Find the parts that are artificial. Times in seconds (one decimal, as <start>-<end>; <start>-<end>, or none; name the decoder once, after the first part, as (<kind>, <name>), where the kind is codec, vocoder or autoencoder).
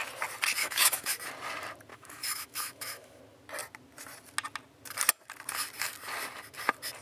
0.6-1.2 (autoencoder, DAC-VAE); 1.9-3.2